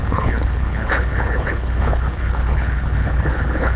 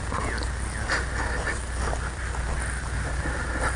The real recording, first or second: second